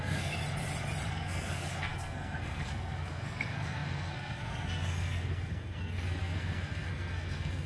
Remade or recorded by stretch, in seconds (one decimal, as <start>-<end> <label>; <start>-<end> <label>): 0.0-0.4 remade; 0.4-1.1 recorded; 1.1-7.7 remade